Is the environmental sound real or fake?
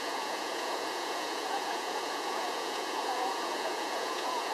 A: fake